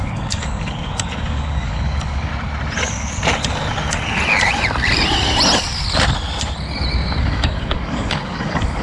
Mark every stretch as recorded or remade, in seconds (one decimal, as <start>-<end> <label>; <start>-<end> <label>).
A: 0.0-2.3 remade; 2.3-7.2 recorded; 7.2-8.8 remade